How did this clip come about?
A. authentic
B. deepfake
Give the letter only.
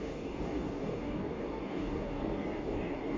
B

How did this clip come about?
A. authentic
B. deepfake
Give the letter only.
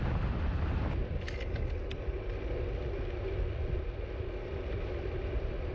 A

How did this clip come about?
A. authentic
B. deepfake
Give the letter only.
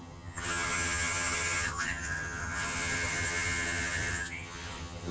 B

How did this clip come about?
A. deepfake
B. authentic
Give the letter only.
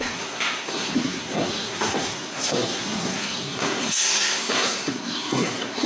A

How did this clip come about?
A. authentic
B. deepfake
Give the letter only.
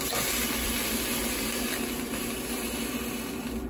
A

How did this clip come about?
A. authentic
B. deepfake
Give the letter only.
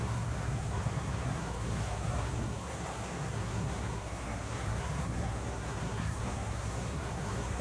B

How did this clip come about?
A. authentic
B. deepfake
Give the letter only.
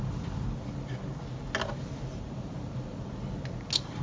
A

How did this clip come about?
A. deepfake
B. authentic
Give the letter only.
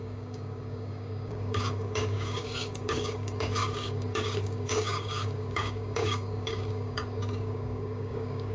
A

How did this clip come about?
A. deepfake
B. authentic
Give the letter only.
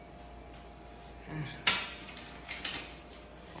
B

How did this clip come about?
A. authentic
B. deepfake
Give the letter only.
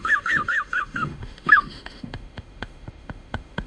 B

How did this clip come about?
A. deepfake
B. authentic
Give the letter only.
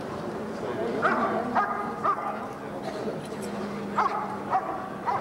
B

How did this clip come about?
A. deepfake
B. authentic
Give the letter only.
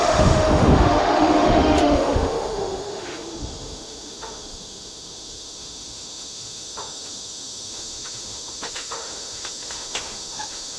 A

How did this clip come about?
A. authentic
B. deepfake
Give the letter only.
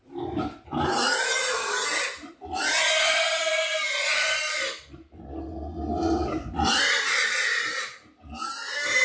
A